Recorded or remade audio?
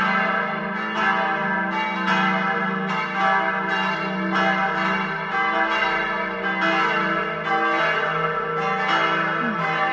recorded